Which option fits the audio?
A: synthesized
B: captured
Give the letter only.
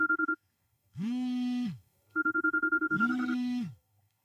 A